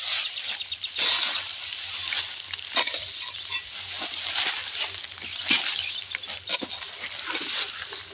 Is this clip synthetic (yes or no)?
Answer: no